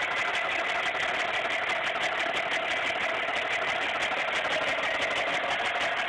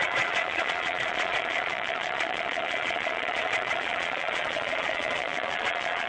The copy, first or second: second